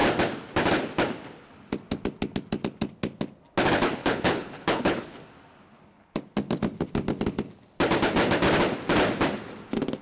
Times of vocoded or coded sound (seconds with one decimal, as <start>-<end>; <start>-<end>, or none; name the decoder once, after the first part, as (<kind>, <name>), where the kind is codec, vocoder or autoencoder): 4.0-5.2 (codec, HILCodec)